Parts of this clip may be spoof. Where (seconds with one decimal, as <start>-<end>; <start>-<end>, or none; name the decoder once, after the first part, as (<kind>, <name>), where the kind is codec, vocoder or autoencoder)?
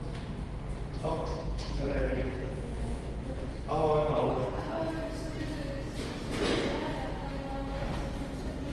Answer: 1.3-2.6 (codec, HILCodec); 4.1-4.9